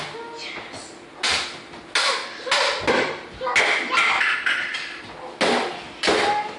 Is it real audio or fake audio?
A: real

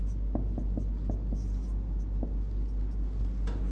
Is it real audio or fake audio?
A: real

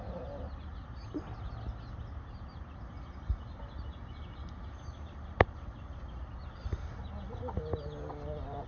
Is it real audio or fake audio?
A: real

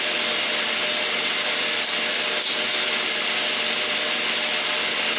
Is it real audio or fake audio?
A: real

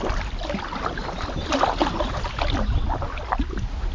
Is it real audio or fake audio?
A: real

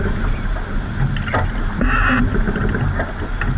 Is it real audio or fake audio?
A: real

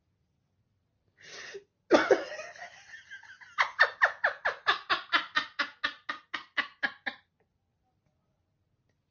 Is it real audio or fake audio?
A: real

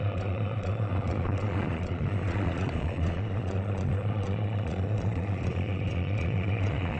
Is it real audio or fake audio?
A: fake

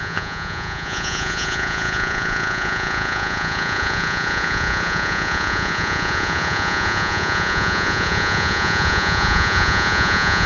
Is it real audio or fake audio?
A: fake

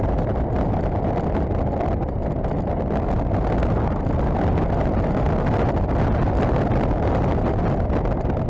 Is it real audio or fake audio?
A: real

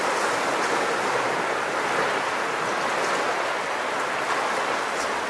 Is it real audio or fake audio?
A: real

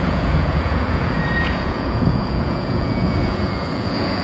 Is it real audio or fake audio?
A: fake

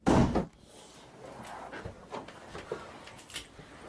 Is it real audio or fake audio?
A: real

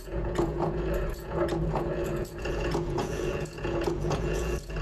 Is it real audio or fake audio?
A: fake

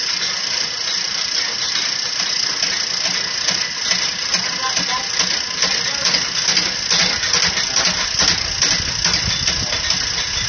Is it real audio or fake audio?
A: real